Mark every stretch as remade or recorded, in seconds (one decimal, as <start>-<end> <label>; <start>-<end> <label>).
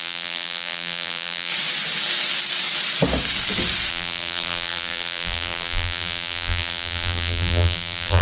0.0-1.5 remade; 1.5-3.9 recorded; 3.9-8.2 remade